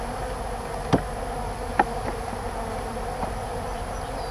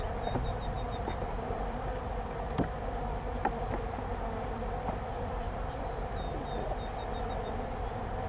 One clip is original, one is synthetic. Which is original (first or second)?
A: first